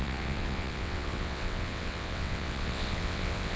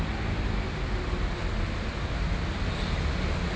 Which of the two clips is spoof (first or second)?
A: first